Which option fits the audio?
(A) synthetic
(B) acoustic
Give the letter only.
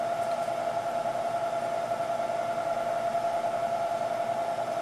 B